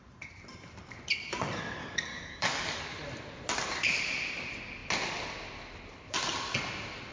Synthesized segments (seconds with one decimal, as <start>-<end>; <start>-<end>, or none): 1.8-2.8